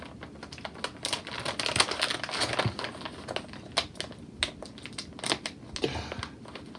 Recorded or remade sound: recorded